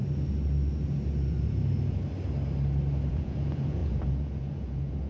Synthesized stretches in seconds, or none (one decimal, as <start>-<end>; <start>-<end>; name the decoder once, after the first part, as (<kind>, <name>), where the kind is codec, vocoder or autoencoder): 3.1-5.1 (vocoder, Vocos)